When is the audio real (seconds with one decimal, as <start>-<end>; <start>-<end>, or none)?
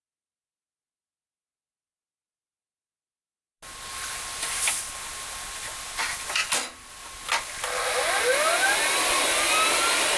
0.0-10.2